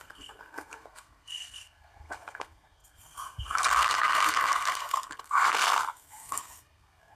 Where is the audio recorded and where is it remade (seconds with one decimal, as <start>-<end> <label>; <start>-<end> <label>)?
0.0-7.2 remade